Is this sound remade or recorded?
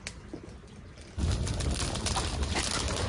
recorded